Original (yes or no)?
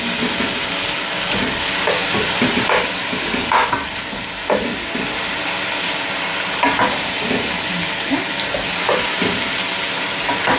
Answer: yes